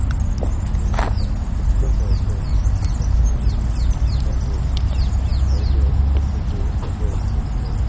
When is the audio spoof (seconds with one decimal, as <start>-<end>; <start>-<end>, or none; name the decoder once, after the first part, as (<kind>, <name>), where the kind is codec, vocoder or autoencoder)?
none